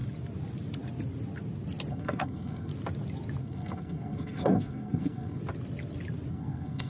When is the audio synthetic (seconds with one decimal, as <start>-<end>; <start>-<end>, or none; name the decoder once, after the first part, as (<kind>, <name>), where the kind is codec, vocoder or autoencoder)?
1.9-2.7 (codec, SNAC); 3.4-5.4; 6.3-6.9